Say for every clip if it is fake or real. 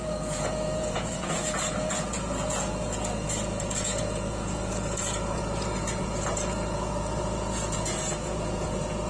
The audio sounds fake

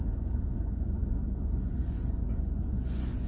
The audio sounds fake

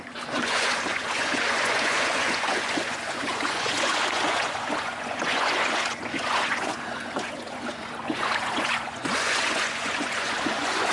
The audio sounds fake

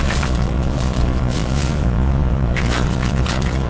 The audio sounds fake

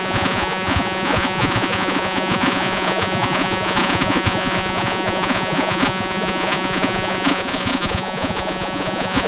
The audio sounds fake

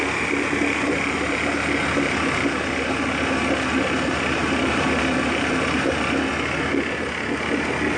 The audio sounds real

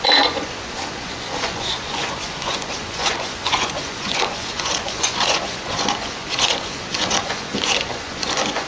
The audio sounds fake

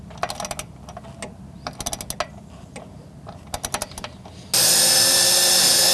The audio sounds real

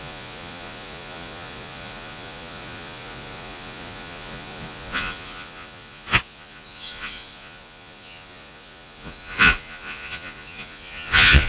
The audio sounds fake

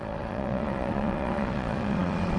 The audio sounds fake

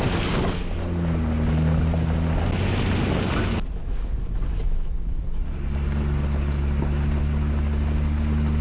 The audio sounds real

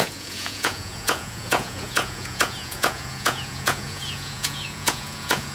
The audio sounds fake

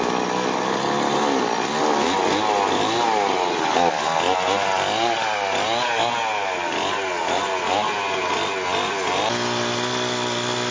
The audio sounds real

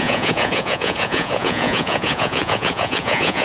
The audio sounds fake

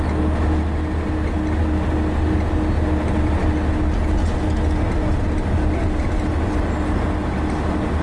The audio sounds real